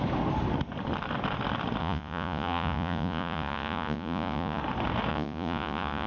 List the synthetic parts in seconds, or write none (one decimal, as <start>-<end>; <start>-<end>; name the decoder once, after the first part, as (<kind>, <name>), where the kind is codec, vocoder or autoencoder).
1.8-4.6 (vocoder, Vocos); 5.1-6.1